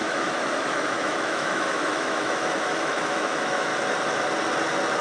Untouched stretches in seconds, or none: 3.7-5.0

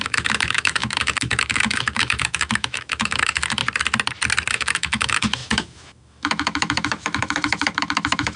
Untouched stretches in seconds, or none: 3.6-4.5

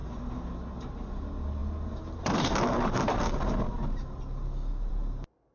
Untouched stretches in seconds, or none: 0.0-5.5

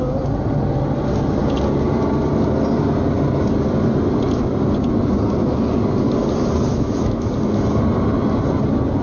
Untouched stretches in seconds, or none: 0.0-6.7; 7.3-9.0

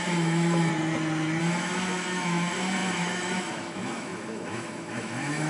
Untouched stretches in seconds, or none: 0.7-1.4